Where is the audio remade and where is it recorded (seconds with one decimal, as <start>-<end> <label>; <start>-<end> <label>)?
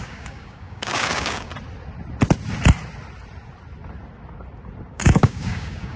0.0-1.5 remade; 1.5-4.9 recorded; 4.9-6.0 remade